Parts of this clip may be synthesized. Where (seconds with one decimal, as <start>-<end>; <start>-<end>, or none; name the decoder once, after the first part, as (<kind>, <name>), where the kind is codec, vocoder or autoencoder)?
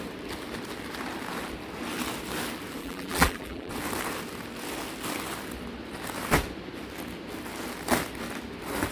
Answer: 2.8-3.7 (vocoder, BigVGAN v2)